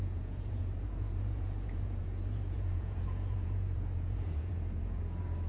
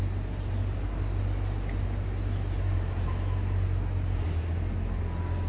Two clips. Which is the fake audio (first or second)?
first